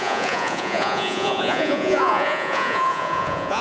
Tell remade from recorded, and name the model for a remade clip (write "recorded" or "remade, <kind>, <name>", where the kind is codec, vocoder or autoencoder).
remade, vocoder, Vocos